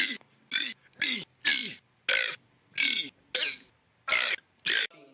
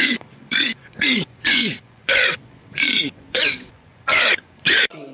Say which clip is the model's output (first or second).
second